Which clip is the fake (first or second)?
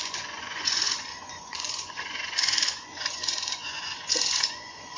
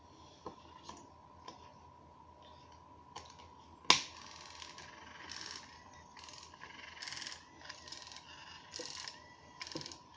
first